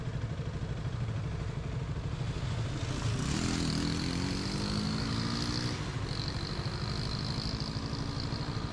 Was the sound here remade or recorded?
recorded